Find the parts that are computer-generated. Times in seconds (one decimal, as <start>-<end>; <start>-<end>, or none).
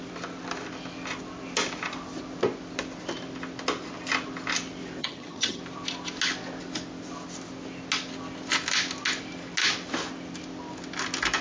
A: 5.0-5.6